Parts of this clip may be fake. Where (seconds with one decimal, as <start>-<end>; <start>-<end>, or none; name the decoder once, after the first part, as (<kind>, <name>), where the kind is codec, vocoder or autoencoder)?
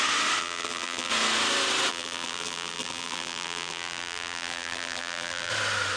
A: 0.4-1.1 (vocoder, BigVGAN v2); 1.9-5.5